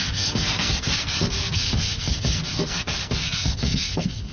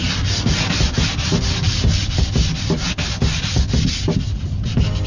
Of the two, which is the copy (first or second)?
first